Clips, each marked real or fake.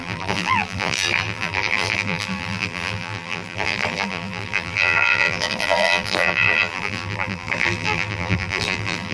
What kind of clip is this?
fake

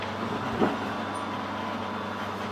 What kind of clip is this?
real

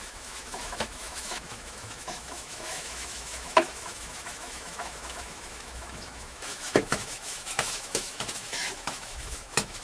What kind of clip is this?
fake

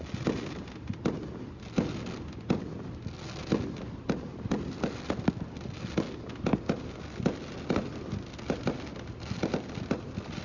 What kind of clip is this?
real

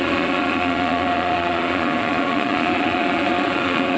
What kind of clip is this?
fake